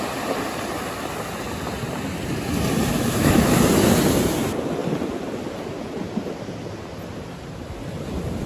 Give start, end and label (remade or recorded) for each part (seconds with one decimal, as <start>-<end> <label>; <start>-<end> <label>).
0.0-2.9 recorded; 2.9-3.6 remade; 3.6-8.5 recorded